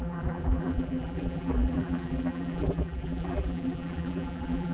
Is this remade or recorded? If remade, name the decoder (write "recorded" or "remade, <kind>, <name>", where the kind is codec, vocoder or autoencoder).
remade, vocoder, BigVGAN v2